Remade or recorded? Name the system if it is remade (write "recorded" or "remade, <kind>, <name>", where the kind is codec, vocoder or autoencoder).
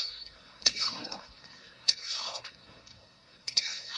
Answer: remade, codec, SNAC